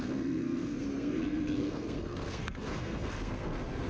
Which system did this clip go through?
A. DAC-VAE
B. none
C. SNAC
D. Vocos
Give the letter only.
C